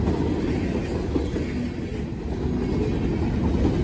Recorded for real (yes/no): yes